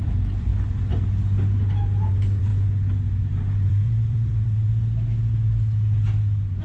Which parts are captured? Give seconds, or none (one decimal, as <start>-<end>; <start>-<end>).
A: 0.5-2.1; 2.5-3.5; 4.7-6.6